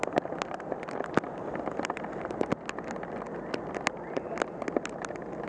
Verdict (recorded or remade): recorded